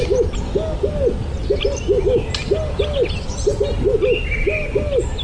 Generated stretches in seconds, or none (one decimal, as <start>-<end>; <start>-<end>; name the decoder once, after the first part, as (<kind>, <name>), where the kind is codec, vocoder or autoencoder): none